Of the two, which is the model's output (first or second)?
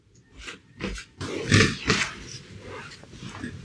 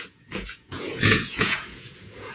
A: second